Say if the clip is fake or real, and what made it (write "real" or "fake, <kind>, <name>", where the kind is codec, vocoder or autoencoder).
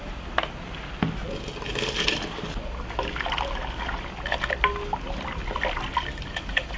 real